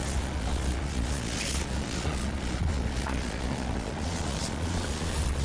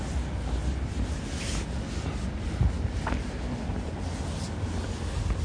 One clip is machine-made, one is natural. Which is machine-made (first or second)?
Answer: first